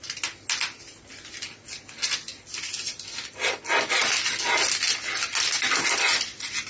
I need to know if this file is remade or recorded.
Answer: recorded